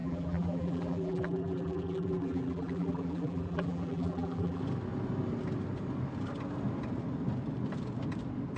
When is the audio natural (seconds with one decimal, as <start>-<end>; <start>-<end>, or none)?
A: 4.6-8.6